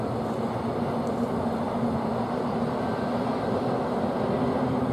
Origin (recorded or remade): recorded